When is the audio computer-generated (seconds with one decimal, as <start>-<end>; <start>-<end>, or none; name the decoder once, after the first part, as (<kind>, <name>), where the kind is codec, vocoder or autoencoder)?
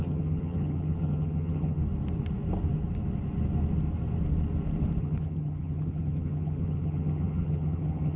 0.0-1.8 (vocoder, HiFi-GAN); 5.0-8.2